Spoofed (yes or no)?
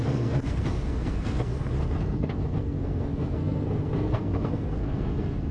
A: yes